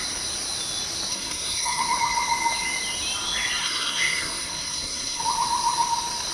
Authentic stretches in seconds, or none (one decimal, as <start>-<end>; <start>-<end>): 0.0-1.1; 1.8-3.6; 5.2-6.3